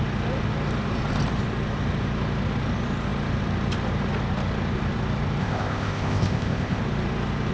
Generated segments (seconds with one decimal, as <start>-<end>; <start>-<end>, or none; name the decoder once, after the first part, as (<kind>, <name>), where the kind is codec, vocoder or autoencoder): 5.4-6.8 (codec, ZipCodec)